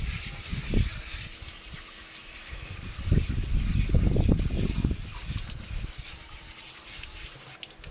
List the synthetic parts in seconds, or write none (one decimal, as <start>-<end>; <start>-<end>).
none